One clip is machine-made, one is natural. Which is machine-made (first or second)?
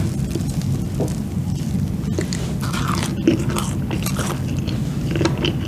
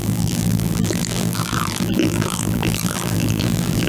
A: second